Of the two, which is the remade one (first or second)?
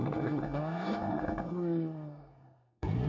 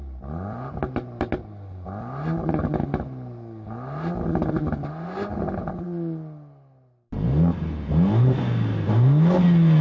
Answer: first